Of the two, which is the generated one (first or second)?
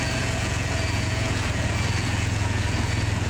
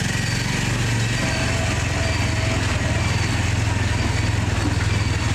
first